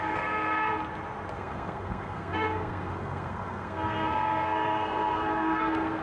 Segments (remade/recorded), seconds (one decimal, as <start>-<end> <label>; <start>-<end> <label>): 0.0-0.7 remade; 0.7-1.3 recorded; 1.3-6.0 remade